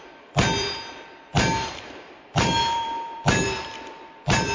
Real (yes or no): no